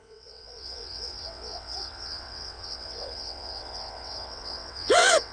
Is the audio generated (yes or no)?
yes